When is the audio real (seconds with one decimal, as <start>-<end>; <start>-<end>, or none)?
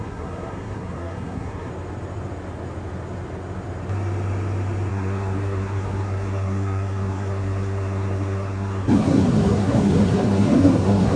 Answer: 1.7-4.9